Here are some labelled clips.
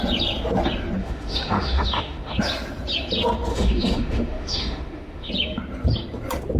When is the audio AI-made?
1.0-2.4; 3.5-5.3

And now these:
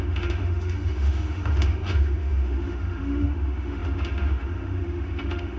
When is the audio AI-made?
0.0-5.6

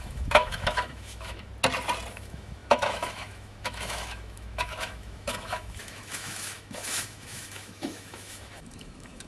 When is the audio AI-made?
0.0-1.5; 2.1-9.3

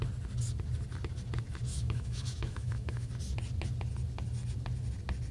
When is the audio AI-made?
1.7-3.1

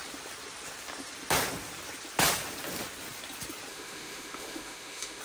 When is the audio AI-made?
3.7-5.2